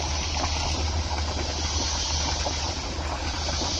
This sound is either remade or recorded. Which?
recorded